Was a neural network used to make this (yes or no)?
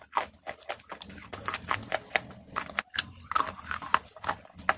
no